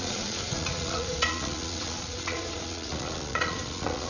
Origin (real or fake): fake